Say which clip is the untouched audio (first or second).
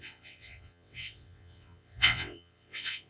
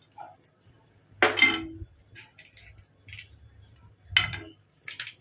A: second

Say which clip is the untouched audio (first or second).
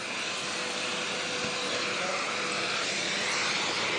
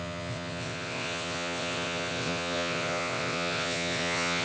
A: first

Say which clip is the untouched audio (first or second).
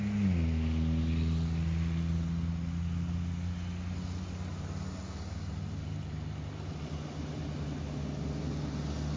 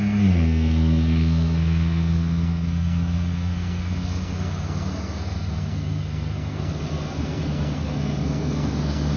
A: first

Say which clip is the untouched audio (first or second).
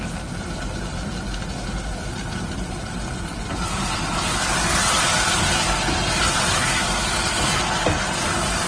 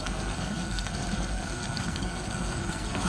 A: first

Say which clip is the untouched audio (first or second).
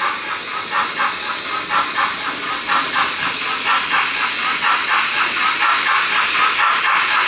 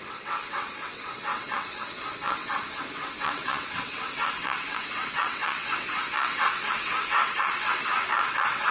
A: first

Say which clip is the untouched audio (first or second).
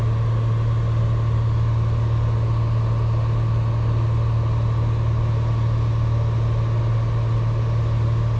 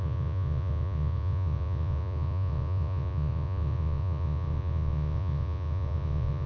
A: first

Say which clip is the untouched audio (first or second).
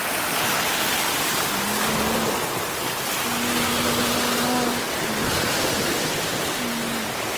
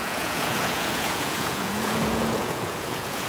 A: first